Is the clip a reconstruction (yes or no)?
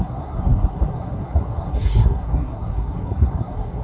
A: yes